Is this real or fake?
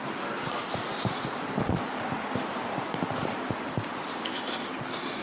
real